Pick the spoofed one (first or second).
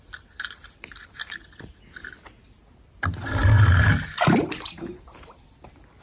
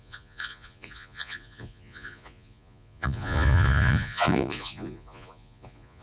second